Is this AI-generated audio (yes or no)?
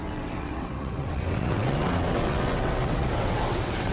yes